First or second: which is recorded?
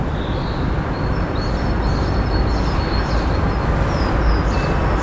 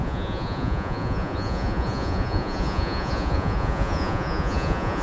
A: first